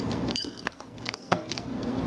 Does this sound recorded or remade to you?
remade